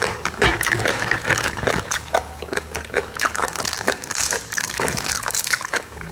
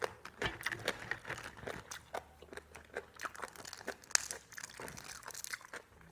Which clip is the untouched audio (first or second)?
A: second